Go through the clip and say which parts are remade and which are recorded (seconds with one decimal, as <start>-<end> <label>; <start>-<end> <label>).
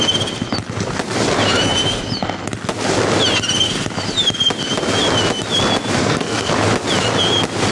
0.0-6.0 recorded; 6.0-6.5 remade; 6.5-7.7 recorded